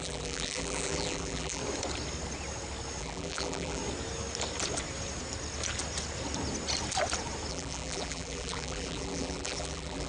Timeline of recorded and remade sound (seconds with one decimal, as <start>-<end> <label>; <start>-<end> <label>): 0.0-1.6 remade; 1.6-3.0 recorded; 3.0-3.8 remade; 3.8-7.5 recorded; 7.5-10.1 remade